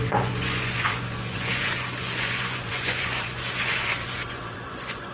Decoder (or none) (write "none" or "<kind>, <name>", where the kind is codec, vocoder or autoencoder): vocoder, Vocos